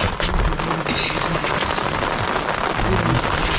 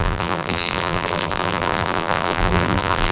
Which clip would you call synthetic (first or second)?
second